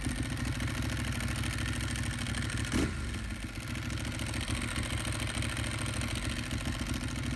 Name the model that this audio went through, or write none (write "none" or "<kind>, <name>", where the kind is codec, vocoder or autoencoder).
none